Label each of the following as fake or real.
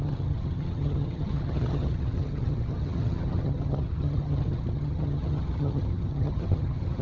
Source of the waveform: fake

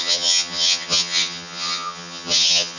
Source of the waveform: fake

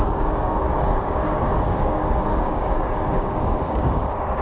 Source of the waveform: fake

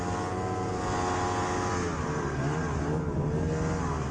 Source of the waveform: real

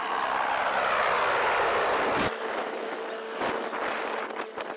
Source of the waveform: real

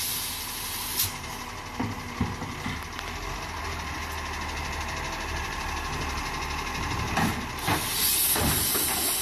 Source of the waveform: real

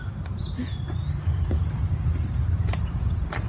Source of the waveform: real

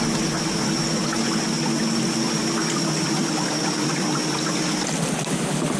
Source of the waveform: real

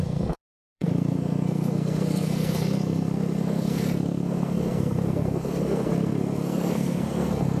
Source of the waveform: fake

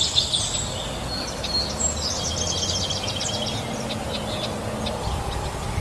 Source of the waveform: real